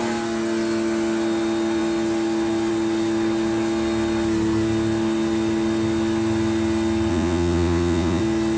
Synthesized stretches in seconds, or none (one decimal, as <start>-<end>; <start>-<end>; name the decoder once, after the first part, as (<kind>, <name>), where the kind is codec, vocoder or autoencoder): 7.1-8.2 (vocoder, Vocos)